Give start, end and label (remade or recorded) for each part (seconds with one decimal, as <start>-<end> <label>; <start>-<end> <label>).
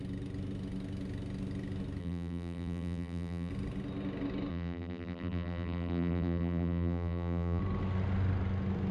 0.0-2.0 recorded; 2.0-3.5 remade; 3.5-4.5 recorded; 4.5-7.6 remade; 7.6-8.9 recorded